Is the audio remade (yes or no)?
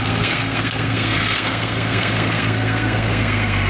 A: yes